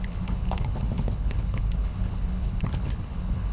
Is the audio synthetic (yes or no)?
yes